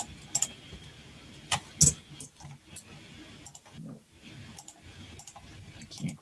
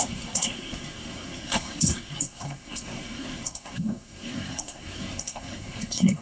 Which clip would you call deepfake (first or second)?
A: second